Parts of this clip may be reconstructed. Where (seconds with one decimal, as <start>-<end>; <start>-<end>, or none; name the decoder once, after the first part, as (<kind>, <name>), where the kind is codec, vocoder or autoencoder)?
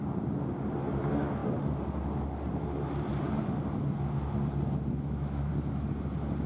1.0-1.4 (autoencoder, DAC-VAE); 4.9-5.5